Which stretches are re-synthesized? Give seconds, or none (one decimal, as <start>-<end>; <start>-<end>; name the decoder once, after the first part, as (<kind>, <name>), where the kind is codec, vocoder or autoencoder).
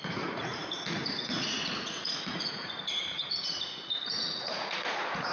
0.0-5.3 (vocoder, Vocos)